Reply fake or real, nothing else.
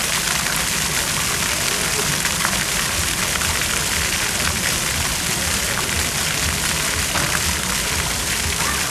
real